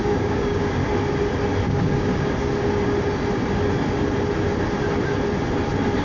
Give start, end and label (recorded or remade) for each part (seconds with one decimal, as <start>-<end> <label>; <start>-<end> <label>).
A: 0.0-0.8 remade; 0.8-1.7 recorded; 1.7-2.1 remade; 2.1-6.0 recorded